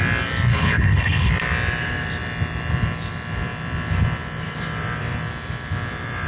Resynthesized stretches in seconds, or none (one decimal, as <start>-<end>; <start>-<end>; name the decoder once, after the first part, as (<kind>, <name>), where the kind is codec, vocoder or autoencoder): 0.5-1.3 (codec, HILCodec)